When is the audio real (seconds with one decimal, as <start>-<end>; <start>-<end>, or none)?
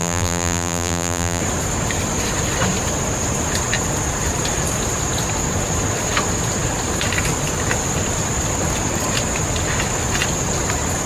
1.4-11.1